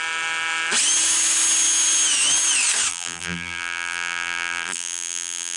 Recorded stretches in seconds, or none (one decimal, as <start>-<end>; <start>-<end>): 0.0-2.9